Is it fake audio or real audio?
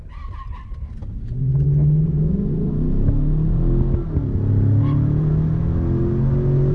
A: real